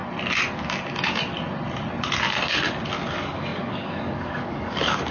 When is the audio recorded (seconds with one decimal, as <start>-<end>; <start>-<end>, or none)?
0.0-3.1